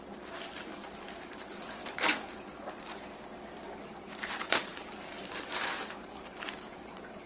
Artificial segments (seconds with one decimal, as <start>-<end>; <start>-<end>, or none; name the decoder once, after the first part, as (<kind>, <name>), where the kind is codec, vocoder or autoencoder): 0.0-1.8 (vocoder, BigVGAN v2); 3.8-7.3